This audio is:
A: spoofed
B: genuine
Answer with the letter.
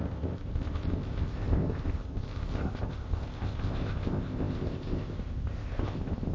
A